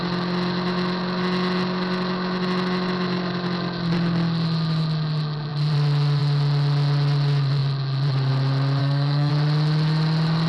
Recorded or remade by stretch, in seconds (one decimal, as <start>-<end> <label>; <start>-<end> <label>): 0.0-8.8 recorded; 8.8-9.3 remade; 9.3-10.5 recorded